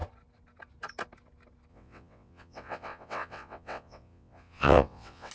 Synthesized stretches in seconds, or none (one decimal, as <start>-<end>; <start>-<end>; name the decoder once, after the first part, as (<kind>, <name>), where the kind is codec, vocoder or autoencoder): 1.7-5.3 (vocoder, WaveNeXt)